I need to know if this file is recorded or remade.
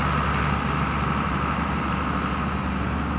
recorded